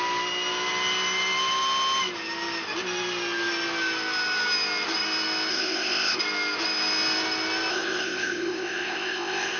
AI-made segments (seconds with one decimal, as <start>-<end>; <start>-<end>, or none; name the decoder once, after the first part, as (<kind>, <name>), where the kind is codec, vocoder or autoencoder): 5.5-6.2 (codec, ZipCodec); 7.7-9.6